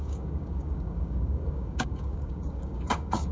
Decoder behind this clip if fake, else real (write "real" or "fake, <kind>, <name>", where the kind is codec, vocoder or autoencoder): fake, codec, DAC